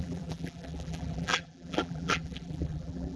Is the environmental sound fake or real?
fake